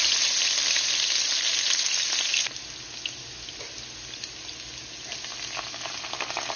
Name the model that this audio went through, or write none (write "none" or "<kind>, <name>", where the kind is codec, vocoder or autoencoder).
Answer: none